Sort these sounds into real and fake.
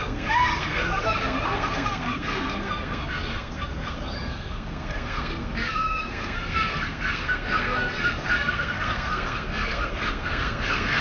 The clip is fake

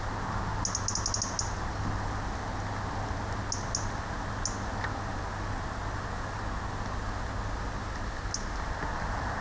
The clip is real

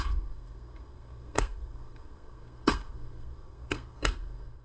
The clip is fake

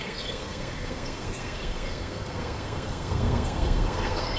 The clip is fake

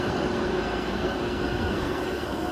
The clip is fake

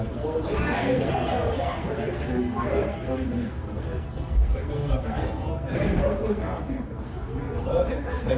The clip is fake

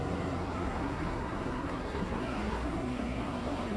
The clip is fake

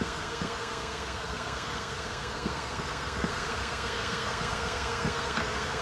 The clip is fake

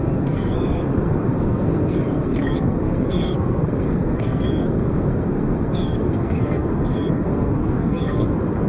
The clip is fake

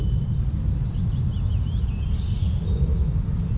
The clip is real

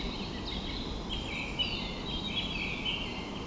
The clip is real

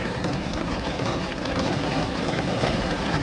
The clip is fake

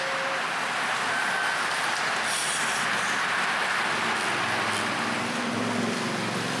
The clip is real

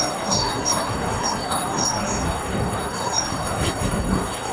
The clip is fake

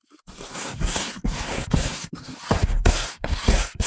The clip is fake